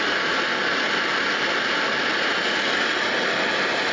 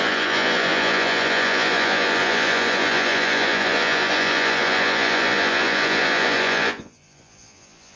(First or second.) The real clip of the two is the first